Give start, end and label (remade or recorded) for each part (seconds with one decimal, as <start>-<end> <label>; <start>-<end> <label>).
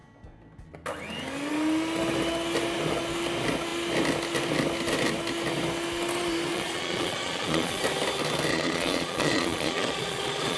0.0-6.5 recorded; 6.5-7.8 remade; 7.8-8.5 recorded; 8.5-10.6 remade